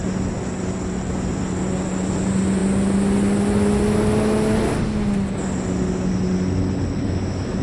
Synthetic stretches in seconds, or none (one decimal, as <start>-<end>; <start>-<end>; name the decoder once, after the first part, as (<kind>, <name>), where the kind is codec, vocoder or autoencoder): none